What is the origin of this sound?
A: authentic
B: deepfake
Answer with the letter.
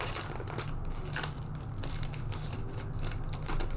A